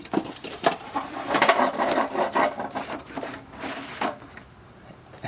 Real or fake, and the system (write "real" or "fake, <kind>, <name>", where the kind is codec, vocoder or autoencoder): fake, vocoder, BigVGAN v2